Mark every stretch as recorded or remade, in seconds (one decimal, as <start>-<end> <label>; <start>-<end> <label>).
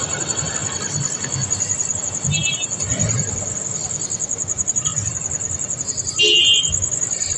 0.0-7.4 recorded